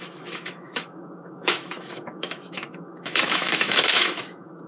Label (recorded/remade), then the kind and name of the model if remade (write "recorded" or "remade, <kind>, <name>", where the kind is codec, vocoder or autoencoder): remade, autoencoder, DAC-VAE